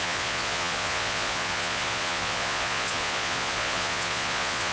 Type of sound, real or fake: fake